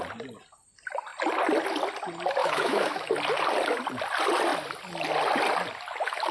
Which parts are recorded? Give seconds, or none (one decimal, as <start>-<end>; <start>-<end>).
0.0-2.4; 3.1-6.3